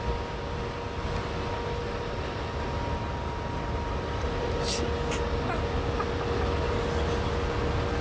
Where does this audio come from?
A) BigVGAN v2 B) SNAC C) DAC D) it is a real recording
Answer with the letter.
D